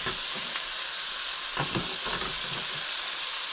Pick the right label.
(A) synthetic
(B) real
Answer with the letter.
B